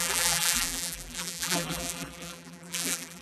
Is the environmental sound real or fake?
fake